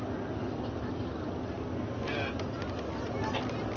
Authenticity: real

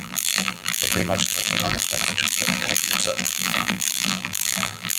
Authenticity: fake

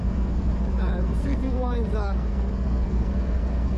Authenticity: fake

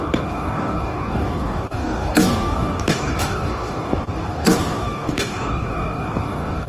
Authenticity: fake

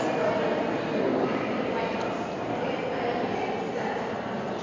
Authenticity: real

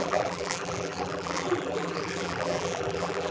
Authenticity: fake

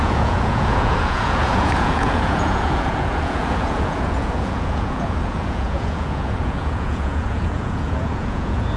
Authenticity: fake